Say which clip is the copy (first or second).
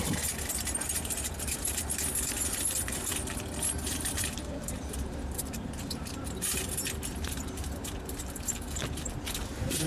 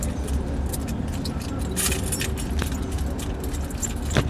first